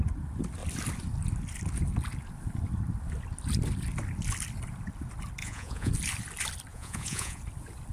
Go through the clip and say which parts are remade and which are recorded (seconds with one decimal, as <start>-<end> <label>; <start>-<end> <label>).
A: 0.0-5.4 recorded; 5.4-5.9 remade; 5.9-6.7 recorded; 6.7-7.4 remade; 7.4-7.9 recorded